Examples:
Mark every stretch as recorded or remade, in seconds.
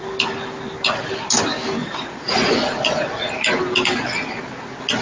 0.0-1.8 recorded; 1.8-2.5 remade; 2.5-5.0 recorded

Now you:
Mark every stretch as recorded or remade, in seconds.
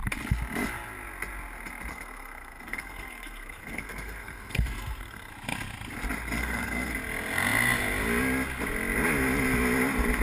0.0-1.9 recorded; 1.9-5.3 remade; 5.3-6.4 recorded; 6.4-6.9 remade; 6.9-10.2 recorded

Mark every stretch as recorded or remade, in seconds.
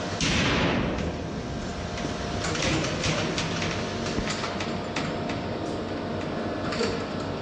0.0-7.4 recorded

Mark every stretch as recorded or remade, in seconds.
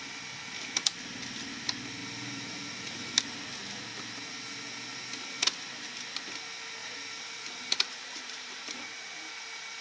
0.0-2.0 recorded; 2.0-3.2 remade; 3.2-6.8 recorded; 6.8-8.7 remade; 8.7-9.8 recorded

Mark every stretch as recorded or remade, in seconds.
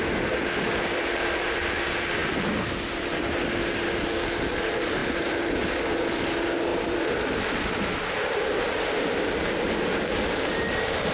0.0-6.7 recorded; 6.7-7.7 remade; 7.7-11.1 recorded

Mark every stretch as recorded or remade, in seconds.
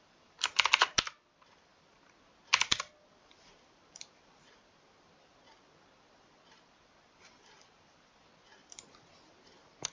0.0-9.9 remade